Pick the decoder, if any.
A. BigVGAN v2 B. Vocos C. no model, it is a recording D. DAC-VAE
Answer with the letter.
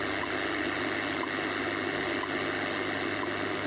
C